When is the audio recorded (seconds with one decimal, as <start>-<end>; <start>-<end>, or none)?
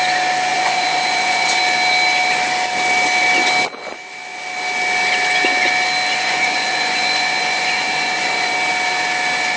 0.0-0.5; 1.6-6.1; 8.5-9.6